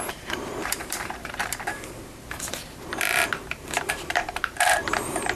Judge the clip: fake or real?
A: fake